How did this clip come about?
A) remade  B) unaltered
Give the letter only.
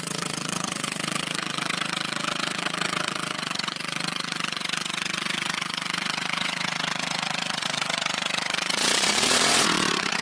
A